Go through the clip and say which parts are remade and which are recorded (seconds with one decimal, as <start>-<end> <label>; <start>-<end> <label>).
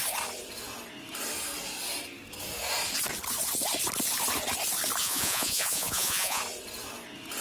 0.0-5.0 recorded; 5.0-6.4 remade; 6.4-7.4 recorded